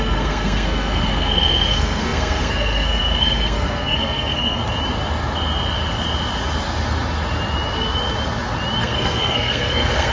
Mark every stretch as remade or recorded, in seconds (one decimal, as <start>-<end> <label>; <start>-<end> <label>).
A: 0.0-4.6 remade; 4.6-8.8 recorded; 8.8-10.1 remade